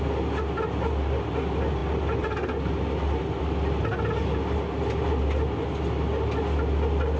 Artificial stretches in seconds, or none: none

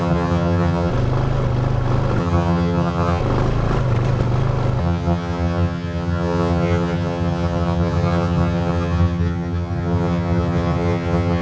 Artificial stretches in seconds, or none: 0.0-0.9 (vocoder, HiFi-GAN); 2.2-3.2; 4.8-11.4

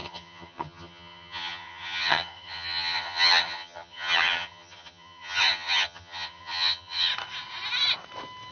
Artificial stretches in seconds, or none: 0.0-7.1 (vocoder, HiFi-GAN)

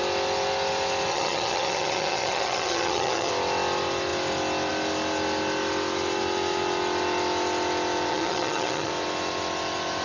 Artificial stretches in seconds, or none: 1.1-3.3 (vocoder, HiFi-GAN); 8.1-8.9

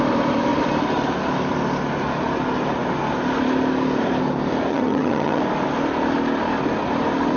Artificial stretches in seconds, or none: 4.7-5.4 (vocoder, HiFi-GAN)